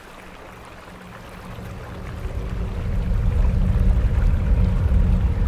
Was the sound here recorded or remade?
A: recorded